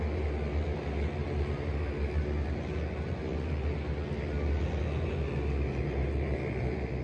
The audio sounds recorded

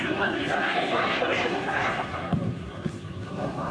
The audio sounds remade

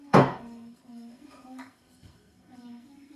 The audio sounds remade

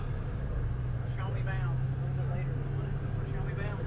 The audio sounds recorded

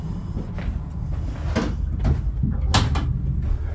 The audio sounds recorded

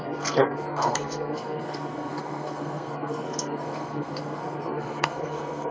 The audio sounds remade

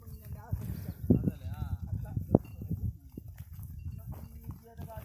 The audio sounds recorded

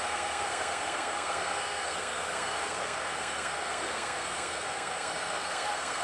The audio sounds remade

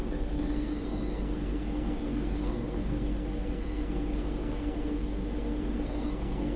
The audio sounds remade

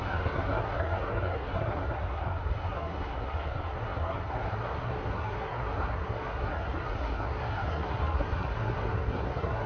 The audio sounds remade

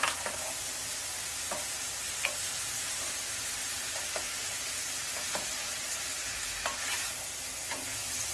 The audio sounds recorded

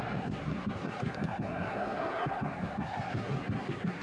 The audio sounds remade